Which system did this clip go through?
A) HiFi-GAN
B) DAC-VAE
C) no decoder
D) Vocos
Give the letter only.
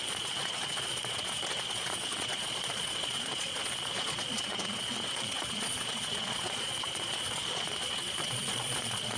D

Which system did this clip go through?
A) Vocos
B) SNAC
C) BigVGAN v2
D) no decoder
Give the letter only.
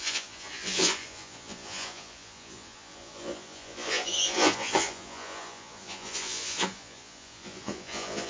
A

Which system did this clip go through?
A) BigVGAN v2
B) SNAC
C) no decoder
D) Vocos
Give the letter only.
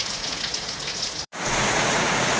D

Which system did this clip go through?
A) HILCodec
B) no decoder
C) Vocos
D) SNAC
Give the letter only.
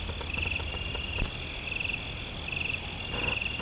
B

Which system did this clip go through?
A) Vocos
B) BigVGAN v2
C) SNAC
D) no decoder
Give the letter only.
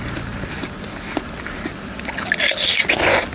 D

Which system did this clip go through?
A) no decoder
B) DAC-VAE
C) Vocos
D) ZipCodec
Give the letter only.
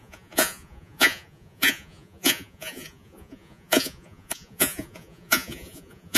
C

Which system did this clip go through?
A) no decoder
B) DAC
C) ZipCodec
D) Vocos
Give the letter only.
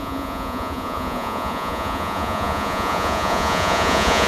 D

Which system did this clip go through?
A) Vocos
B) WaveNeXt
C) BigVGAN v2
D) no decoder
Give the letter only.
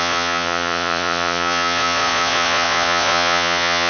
A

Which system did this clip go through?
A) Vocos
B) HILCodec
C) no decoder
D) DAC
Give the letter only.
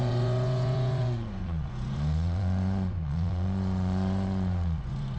A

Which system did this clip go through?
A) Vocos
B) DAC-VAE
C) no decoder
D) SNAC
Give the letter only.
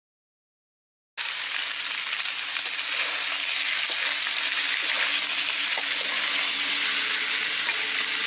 C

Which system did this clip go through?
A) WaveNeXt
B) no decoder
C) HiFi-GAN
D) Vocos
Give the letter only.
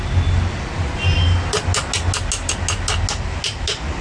B